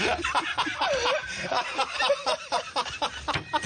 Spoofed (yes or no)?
no